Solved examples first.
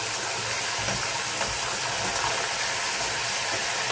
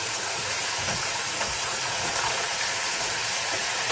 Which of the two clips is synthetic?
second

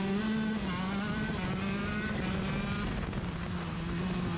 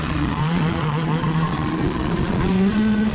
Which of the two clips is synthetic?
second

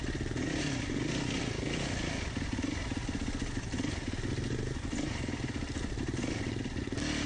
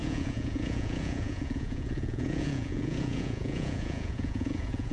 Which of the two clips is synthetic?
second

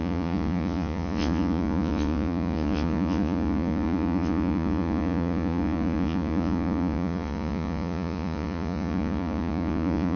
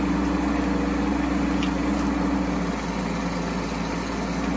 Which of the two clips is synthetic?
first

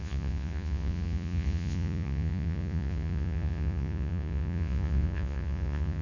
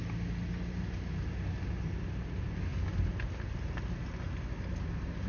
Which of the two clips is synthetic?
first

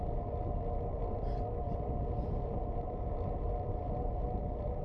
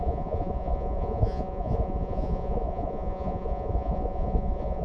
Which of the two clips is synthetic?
second